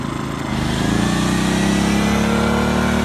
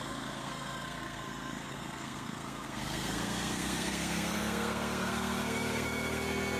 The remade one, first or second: second